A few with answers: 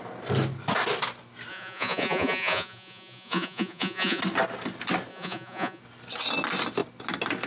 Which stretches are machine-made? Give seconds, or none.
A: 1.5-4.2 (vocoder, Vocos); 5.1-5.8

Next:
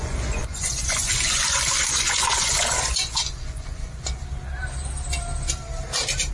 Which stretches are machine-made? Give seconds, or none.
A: 0.0-4.2 (vocoder, Vocos)

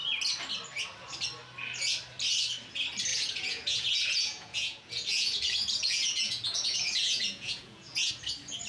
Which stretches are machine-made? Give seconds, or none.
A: 3.1-8.1 (vocoder, Vocos)

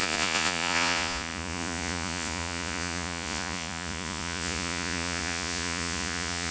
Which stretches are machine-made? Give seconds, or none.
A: 0.0-6.5 (vocoder, Vocos)

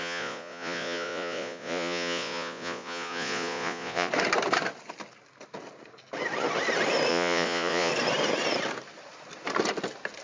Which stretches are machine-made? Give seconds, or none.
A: 0.0-4.1 (vocoder, Vocos); 7.1-7.9